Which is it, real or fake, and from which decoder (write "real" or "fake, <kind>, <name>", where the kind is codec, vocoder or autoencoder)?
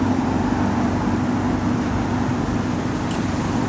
real